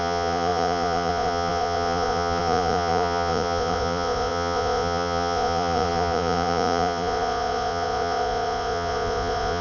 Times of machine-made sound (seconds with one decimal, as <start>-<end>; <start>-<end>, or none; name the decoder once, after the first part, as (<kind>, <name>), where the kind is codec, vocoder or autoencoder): 0.0-9.6 (vocoder, Vocos)